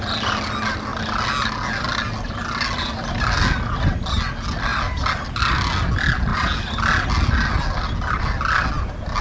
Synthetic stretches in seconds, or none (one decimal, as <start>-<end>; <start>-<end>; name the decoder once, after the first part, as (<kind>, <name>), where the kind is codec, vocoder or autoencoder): none